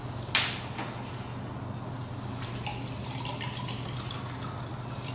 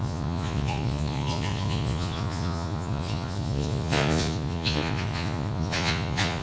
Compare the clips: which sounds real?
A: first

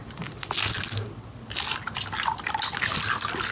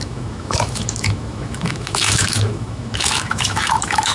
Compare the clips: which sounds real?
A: first